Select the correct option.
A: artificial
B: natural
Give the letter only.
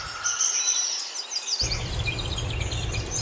A